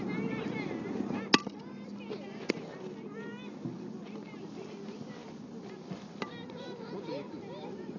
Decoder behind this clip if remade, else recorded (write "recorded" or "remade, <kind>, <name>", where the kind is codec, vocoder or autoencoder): recorded